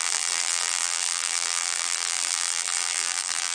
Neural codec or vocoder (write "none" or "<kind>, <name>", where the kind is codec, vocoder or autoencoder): vocoder, BigVGAN v2